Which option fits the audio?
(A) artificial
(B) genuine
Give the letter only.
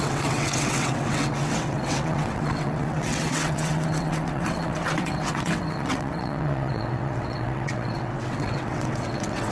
A